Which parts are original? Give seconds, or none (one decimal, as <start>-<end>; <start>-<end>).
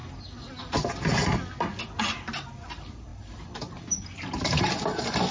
0.0-5.3